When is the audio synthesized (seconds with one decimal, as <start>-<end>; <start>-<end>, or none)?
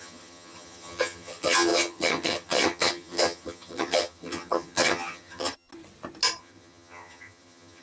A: 0.0-5.7; 6.4-7.8